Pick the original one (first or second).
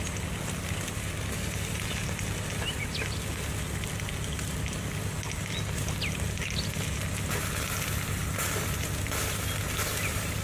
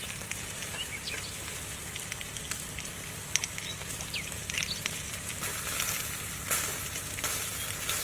first